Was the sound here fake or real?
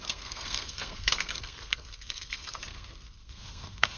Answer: fake